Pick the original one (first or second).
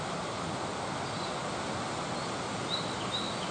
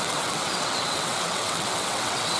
first